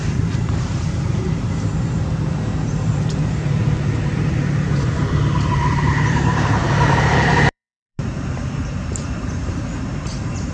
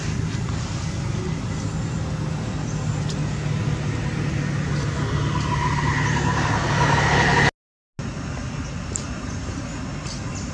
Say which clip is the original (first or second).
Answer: second